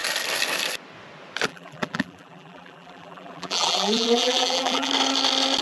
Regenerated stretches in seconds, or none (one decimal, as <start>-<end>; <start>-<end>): 1.5-4.9